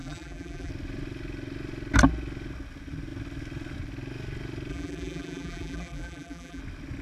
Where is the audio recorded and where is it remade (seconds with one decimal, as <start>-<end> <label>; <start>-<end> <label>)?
0.0-0.7 remade; 0.7-4.7 recorded; 4.7-6.6 remade; 6.6-7.0 recorded